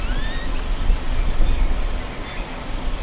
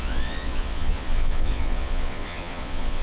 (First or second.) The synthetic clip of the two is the second